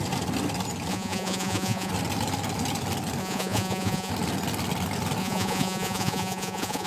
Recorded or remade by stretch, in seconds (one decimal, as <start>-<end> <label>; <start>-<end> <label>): 0.0-0.9 recorded; 0.9-1.9 remade; 1.9-3.2 recorded; 3.2-4.1 remade; 4.1-5.2 recorded; 5.2-6.9 remade